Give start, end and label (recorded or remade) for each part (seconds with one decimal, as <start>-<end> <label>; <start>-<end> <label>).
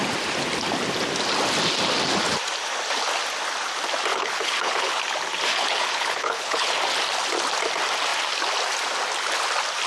0.0-4.1 recorded; 4.1-5.0 remade; 5.0-5.5 recorded; 5.5-6.7 remade; 6.7-9.9 recorded